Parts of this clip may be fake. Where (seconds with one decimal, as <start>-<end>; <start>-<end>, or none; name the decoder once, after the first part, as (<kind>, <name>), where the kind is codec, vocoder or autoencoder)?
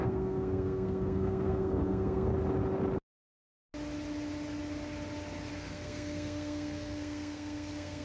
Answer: 0.0-2.3 (codec, SNAC); 5.5-8.0